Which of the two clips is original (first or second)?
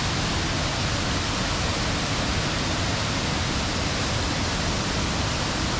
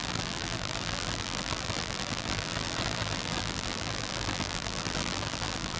first